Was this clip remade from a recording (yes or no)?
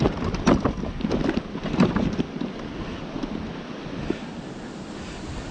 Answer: no